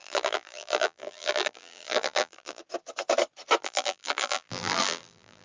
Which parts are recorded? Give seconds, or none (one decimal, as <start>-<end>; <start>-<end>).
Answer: 2.6-3.6